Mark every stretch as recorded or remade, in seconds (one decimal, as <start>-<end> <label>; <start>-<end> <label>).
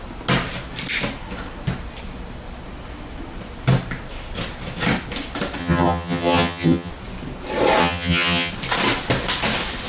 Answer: 0.0-5.6 recorded; 5.6-6.9 remade; 6.9-7.8 recorded; 7.8-8.5 remade; 8.5-9.9 recorded